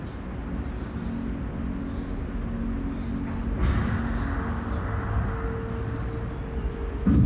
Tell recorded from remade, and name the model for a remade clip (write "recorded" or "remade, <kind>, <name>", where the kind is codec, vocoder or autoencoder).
recorded